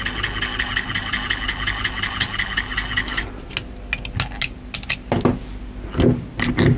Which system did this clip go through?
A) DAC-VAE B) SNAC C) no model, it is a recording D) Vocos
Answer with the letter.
C